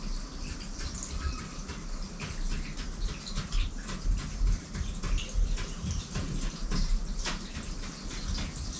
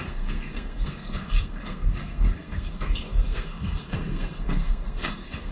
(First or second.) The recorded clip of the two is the first